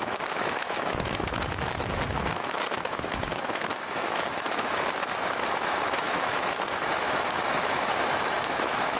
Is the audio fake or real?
fake